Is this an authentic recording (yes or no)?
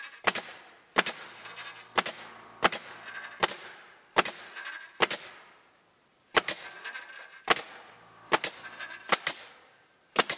yes